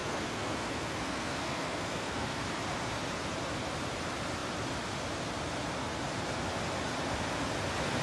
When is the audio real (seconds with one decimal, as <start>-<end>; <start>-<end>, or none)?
2.4-8.0